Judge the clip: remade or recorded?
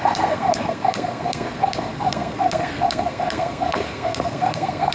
remade